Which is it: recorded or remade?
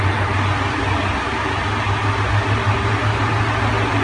recorded